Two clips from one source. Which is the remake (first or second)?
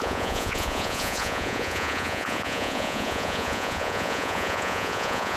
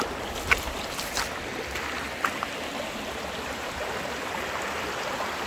first